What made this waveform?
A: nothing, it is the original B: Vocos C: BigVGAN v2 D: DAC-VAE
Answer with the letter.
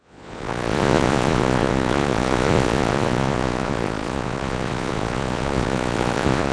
B